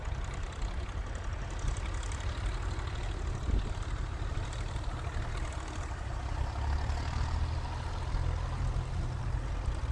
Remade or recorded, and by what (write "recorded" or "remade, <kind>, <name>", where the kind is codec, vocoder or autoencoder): recorded